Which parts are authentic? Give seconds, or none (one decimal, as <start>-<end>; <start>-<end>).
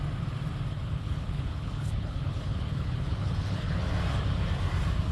0.0-0.7; 3.8-5.1